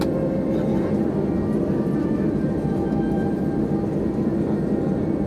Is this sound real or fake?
real